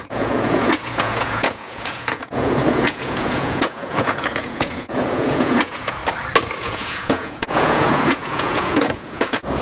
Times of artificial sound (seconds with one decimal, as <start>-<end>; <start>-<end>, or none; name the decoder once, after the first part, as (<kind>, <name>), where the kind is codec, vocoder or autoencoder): 0.0-6.0 (vocoder, Vocos); 6.6-9.6